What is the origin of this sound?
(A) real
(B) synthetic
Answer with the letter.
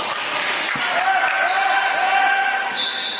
A